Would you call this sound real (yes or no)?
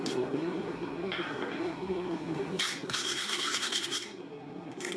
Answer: no